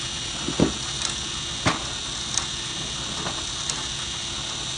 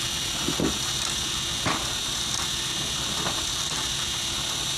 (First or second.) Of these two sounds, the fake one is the second